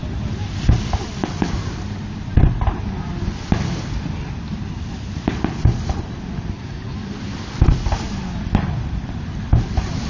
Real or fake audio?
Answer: real